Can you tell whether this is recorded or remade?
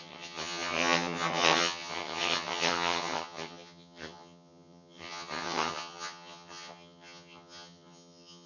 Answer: remade